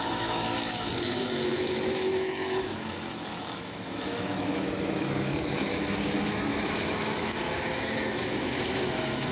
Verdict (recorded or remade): remade